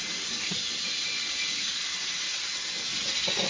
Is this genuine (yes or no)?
yes